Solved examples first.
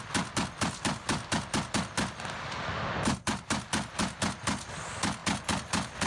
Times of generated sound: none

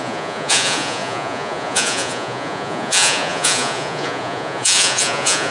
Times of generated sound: 0.0-5.5 (vocoder, Vocos)

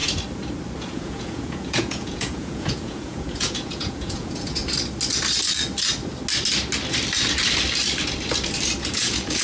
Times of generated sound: 0.8-4.6 (vocoder, Vocos); 8.8-9.4